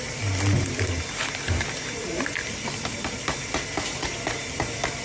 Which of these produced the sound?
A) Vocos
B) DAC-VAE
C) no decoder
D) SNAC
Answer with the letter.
C